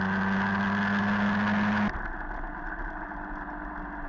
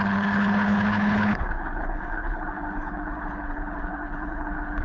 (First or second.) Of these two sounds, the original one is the first